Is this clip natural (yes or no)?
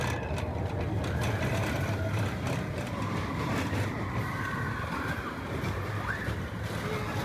yes